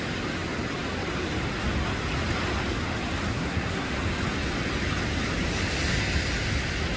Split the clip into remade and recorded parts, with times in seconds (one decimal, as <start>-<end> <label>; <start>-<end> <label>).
0.0-3.3 recorded; 3.3-3.9 remade; 3.9-7.0 recorded